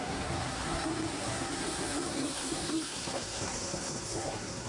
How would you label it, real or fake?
fake